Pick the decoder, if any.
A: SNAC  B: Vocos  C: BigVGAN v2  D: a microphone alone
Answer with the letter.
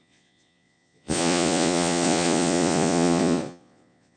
B